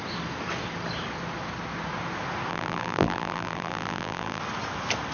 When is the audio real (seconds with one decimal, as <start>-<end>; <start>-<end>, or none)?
0.0-2.5; 4.4-5.1